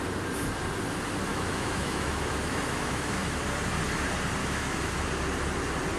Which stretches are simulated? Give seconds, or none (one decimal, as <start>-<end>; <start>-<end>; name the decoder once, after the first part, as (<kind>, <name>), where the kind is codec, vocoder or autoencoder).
1.3-3.4 (autoencoder, DAC-VAE); 4.4-5.1